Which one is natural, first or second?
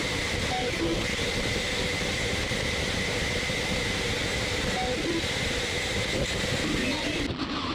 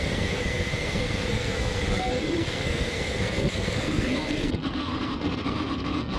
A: first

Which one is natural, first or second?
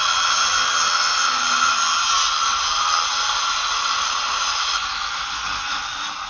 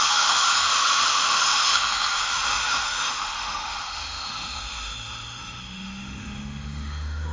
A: first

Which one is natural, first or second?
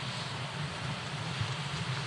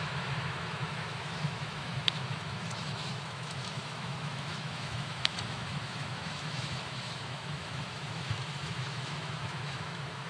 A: first